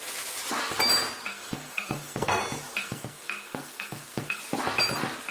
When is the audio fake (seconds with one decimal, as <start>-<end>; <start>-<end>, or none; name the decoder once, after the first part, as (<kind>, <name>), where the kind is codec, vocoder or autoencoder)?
1.3-2.4 (codec, SNAC); 2.8-4.4